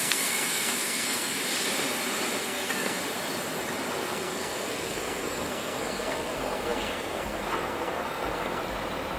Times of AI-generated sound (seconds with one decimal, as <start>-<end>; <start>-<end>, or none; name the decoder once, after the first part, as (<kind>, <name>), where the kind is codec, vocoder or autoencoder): 0.0-1.4 (codec, SNAC); 2.4-3.0; 3.9-8.6